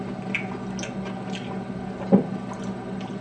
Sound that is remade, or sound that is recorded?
recorded